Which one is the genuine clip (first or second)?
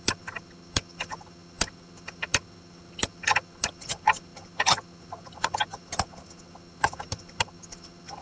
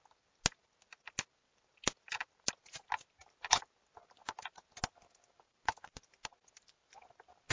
second